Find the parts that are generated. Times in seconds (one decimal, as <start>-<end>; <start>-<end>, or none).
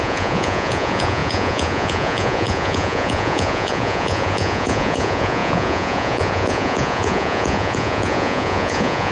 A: 0.0-9.1